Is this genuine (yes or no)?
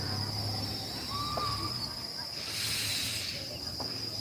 yes